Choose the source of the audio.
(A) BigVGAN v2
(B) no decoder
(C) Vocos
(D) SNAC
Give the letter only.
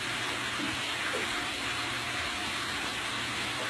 B